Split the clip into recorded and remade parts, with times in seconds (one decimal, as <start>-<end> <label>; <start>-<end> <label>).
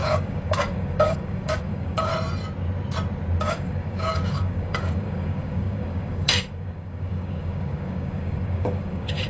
0.0-2.1 remade; 2.1-3.4 recorded; 3.4-9.3 remade